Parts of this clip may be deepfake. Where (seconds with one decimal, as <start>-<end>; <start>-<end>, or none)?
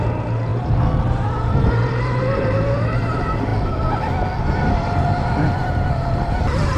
0.0-3.5; 4.4-6.8